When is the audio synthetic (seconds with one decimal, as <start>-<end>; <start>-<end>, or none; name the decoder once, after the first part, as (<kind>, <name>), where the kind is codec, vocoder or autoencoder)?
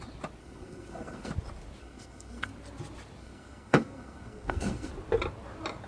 0.4-1.3 (codec, SNAC); 1.8-2.5; 3.2-4.9